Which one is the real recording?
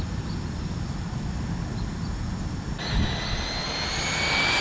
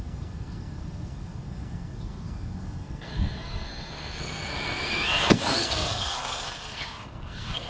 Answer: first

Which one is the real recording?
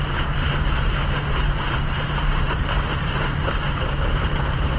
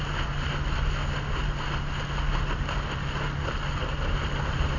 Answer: second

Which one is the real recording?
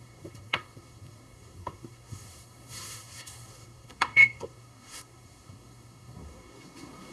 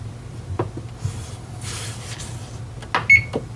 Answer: second